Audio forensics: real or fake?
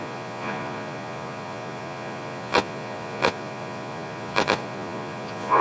fake